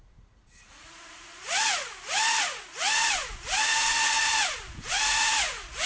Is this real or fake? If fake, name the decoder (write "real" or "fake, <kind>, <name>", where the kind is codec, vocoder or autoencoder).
fake, vocoder, Vocos